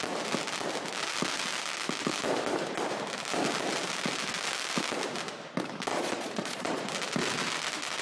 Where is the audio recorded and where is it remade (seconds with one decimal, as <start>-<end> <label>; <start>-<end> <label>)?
0.0-5.9 recorded; 5.9-6.8 remade; 6.8-8.0 recorded